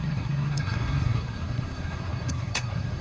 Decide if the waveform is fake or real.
fake